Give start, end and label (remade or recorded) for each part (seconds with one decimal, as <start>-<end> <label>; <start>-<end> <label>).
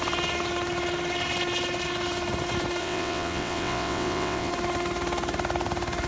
0.0-2.8 recorded; 2.8-4.5 remade; 4.5-6.1 recorded